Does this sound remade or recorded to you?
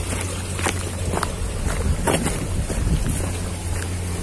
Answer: recorded